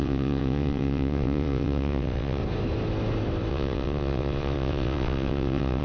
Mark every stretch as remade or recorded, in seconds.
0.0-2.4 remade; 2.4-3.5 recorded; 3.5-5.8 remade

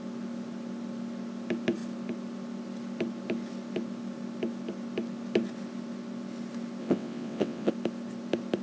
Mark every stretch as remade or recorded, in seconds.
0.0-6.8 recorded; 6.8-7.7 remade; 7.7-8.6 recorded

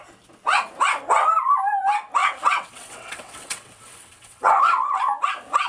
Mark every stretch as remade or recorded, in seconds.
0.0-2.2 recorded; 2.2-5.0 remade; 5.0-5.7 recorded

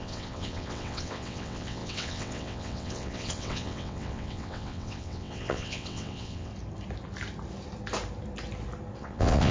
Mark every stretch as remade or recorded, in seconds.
0.0-6.5 remade; 6.5-9.0 recorded; 9.0-9.5 remade

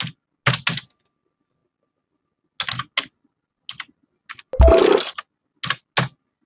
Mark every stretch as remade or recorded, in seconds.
0.0-6.5 recorded

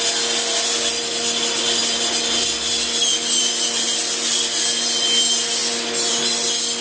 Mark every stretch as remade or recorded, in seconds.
0.0-6.8 recorded

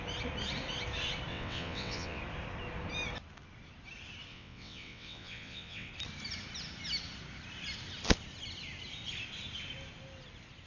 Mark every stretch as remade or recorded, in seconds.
0.0-1.3 recorded; 1.3-2.2 remade; 2.2-4.3 recorded; 4.3-5.9 remade; 5.9-10.7 recorded

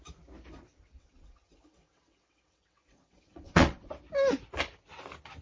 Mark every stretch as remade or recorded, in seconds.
0.0-0.7 recorded; 0.7-3.9 remade; 3.9-5.4 recorded